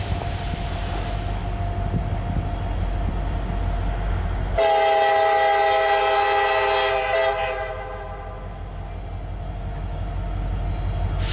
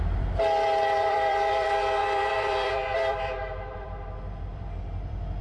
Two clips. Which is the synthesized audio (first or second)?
second